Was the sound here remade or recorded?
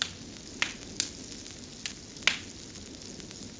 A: recorded